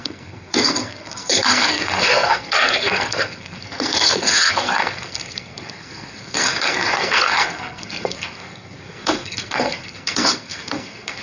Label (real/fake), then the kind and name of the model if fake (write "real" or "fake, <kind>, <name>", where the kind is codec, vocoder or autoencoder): fake, codec, SNAC